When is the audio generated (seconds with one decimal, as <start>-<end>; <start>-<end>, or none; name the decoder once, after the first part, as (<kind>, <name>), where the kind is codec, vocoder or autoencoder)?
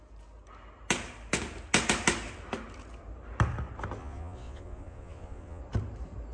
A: 4.0-5.6 (vocoder, Vocos)